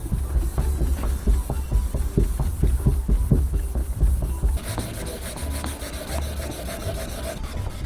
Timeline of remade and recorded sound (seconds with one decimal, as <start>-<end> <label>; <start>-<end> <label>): 0.0-7.9 recorded